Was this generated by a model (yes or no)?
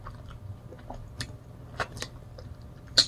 no